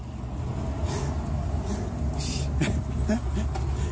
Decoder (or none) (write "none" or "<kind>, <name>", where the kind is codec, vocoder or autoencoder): none